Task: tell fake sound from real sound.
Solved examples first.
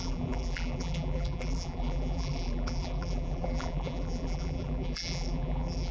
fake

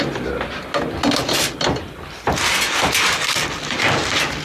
real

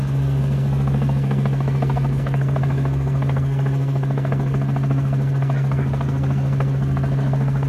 fake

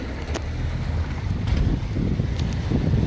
real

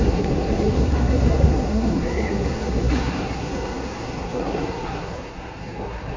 fake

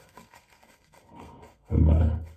fake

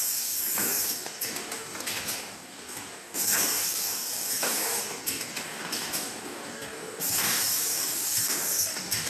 fake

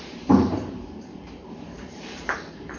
fake